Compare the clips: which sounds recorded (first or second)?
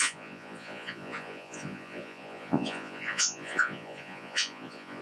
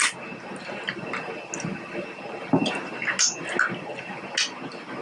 second